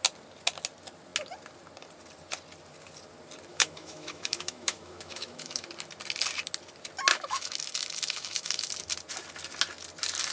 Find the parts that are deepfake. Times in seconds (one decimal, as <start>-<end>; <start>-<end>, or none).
3.5-5.7; 7.1-8.7